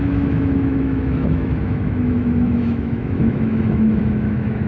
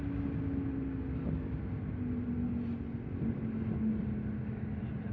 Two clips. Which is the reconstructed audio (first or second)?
first